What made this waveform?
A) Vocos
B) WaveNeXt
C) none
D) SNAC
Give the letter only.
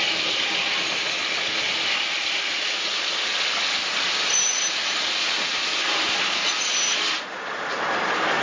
C